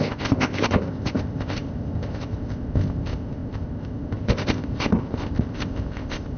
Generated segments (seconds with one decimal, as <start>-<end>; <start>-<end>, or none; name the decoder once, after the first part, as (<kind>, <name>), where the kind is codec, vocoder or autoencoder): 0.0-6.4 (codec, ZipCodec)